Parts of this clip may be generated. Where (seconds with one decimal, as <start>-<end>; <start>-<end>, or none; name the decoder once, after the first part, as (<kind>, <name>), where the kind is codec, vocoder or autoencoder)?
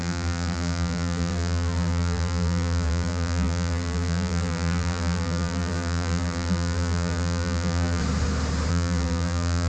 0.0-8.0 (vocoder, BigVGAN v2); 8.7-9.7